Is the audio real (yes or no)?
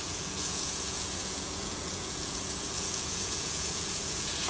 no